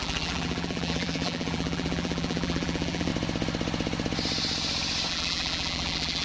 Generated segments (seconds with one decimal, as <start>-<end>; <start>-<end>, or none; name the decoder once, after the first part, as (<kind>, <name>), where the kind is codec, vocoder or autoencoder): 0.0-3.1 (vocoder, BigVGAN v2); 5.1-6.2